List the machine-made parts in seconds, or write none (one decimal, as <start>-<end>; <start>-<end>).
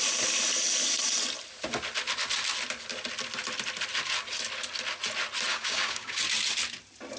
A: 5.5-6.2